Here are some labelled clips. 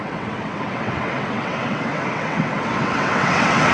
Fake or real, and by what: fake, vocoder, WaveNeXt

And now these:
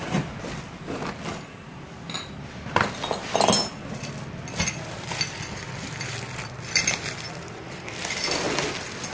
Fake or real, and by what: real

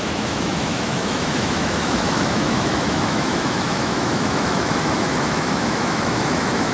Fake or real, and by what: fake, autoencoder, DAC-VAE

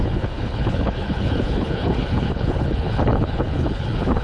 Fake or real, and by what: fake, codec, HILCodec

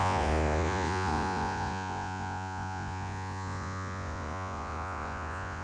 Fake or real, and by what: fake, vocoder, Vocos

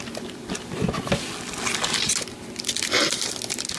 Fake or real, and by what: real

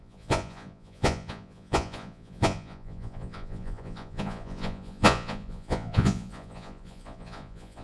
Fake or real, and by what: fake, vocoder, Vocos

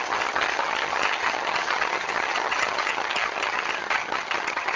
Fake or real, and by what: fake, vocoder, HiFi-GAN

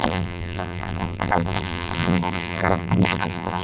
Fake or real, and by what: fake, vocoder, BigVGAN v2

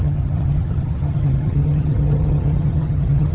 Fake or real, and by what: fake, vocoder, HiFi-GAN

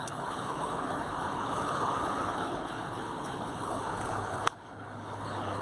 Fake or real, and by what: fake, codec, HILCodec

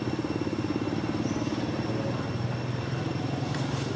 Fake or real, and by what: real